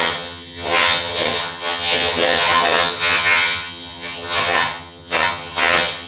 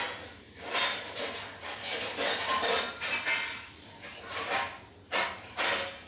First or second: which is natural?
second